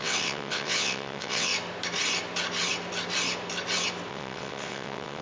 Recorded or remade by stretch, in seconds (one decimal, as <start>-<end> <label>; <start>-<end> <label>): 0.0-1.5 remade; 1.5-4.1 recorded; 4.1-5.2 remade